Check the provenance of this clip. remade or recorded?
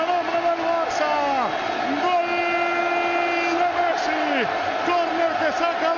recorded